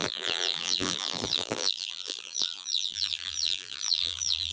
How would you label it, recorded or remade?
remade